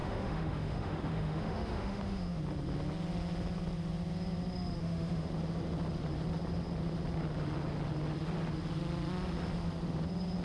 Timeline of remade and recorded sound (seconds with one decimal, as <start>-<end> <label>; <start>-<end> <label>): 0.0-2.4 remade; 2.4-4.8 recorded; 4.8-5.3 remade; 5.3-10.4 recorded